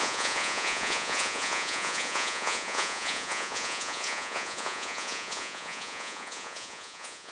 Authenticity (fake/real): fake